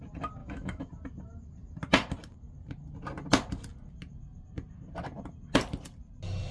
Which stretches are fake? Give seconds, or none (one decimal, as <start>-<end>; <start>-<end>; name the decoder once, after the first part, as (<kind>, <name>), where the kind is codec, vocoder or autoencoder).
0.4-0.9 (autoencoder, DAC-VAE)